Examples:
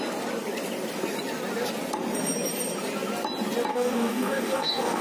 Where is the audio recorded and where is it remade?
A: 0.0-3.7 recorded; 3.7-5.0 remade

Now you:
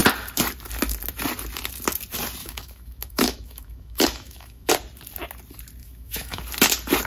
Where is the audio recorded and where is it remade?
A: 0.0-2.4 recorded; 2.4-4.7 remade; 4.7-5.8 recorded; 5.8-6.4 remade; 6.4-7.1 recorded

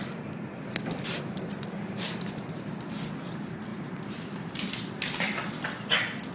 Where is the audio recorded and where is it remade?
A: 0.0-3.7 recorded; 3.7-4.9 remade; 4.9-6.3 recorded